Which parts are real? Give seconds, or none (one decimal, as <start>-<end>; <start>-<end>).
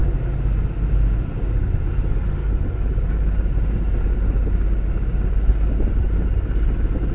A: 0.0-7.1